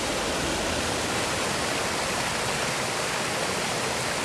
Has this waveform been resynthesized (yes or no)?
no